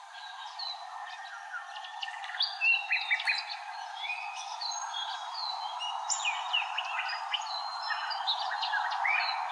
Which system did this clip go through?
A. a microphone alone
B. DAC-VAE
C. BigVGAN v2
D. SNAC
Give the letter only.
A